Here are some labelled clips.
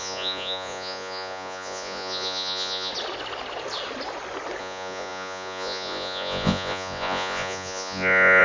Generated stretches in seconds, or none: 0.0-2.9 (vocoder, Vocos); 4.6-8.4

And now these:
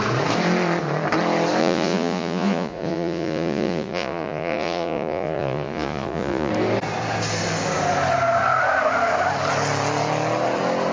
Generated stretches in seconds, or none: 1.6-6.5 (vocoder, Vocos)

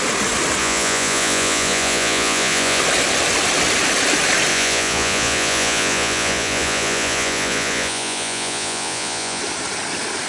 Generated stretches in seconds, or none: 0.6-2.8 (vocoder, Vocos); 4.5-9.4

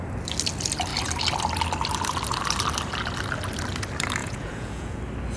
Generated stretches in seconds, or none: 4.2-5.0 (vocoder, Vocos)

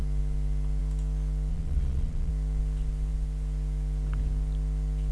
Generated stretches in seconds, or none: 1.5-2.3 (vocoder, Vocos)

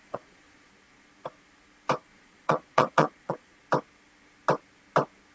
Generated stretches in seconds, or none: 0.0-0.7 (vocoder, Vocos); 2.0-3.6

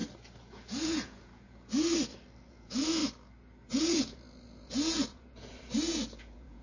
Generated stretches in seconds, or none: 0.5-1.9 (vocoder, Vocos); 2.5-3.0; 3.7-6.6

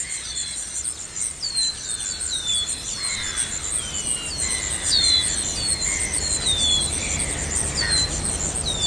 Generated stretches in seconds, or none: 0.0-0.8 (vocoder, Vocos)